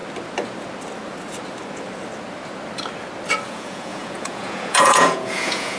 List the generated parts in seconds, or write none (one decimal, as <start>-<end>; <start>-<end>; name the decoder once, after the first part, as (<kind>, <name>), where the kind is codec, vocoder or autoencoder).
3.5-5.8 (vocoder, Vocos)